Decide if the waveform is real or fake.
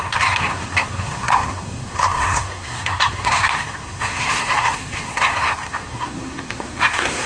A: fake